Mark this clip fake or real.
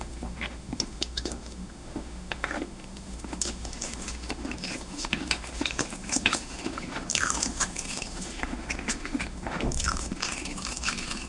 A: fake